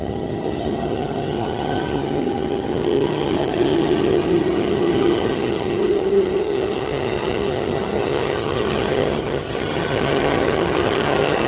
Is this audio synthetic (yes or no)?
yes